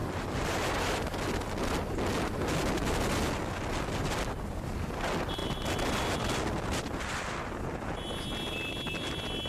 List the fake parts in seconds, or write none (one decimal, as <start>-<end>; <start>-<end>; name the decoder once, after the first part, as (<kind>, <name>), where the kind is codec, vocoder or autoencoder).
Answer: none